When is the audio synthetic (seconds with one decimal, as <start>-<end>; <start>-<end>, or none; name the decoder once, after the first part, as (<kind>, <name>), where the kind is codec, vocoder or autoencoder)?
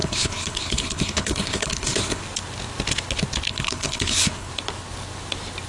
0.0-2.2 (codec, HILCodec); 3.5-4.5